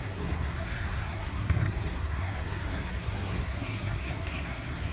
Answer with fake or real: fake